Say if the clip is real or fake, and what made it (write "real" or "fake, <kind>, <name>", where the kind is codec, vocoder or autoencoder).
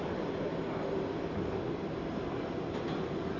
real